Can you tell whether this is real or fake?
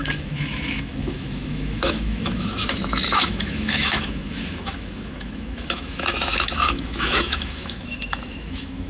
fake